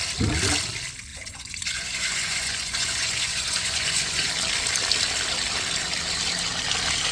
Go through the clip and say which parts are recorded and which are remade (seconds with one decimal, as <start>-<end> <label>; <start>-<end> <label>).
0.0-1.1 recorded; 1.1-4.3 remade; 4.3-7.1 recorded